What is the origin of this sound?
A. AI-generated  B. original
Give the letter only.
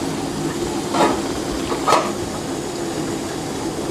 B